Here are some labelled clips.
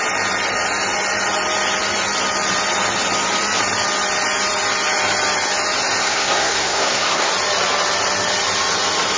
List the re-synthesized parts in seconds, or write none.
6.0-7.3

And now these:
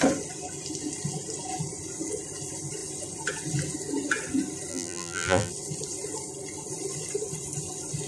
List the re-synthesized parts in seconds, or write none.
4.7-5.5

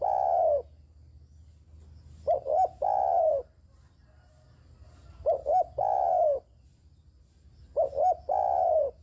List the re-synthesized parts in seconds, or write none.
none